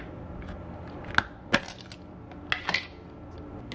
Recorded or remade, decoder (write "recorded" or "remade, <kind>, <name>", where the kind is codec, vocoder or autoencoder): recorded